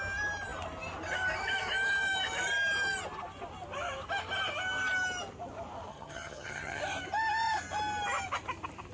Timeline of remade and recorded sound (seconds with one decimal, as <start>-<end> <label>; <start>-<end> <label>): 0.0-5.9 recorded; 5.9-6.8 remade; 6.8-8.9 recorded